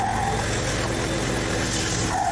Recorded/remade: recorded